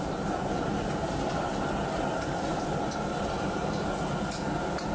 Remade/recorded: recorded